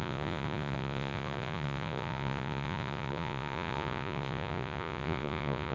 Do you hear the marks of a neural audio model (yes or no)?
yes